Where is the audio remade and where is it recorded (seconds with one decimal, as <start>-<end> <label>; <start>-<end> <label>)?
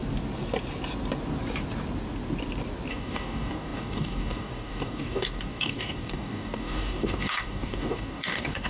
0.0-2.9 recorded; 2.9-8.7 remade